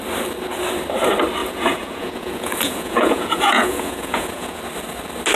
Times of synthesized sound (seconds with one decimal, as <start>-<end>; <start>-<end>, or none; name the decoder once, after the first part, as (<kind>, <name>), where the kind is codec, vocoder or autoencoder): 1.4-4.6 (vocoder, Vocos)